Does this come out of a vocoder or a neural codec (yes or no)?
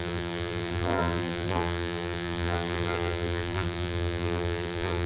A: yes